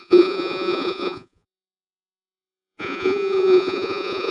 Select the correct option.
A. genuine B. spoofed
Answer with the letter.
B